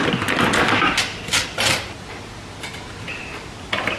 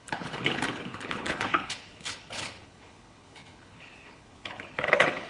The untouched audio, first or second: first